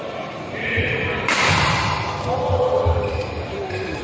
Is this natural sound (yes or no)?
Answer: no